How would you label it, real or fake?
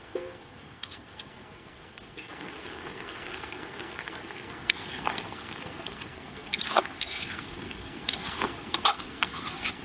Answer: fake